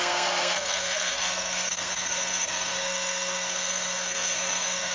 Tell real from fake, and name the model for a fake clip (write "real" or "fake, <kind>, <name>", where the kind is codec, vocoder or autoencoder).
fake, codec, SNAC